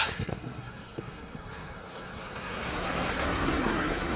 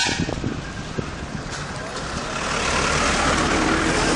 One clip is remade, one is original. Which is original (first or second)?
second